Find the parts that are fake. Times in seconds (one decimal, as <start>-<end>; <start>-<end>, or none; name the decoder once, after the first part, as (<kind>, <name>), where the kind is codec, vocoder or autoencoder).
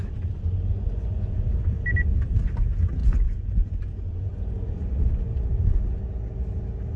0.7-1.6 (vocoder, Vocos); 3.0-4.7